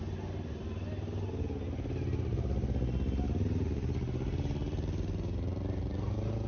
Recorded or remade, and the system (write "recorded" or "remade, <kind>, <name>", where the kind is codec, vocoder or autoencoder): recorded